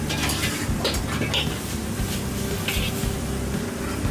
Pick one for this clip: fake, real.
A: real